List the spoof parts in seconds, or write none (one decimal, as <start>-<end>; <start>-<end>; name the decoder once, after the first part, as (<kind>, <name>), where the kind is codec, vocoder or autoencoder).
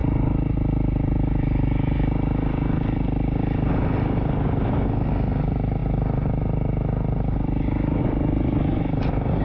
none